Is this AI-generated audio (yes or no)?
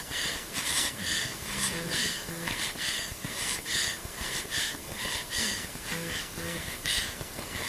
yes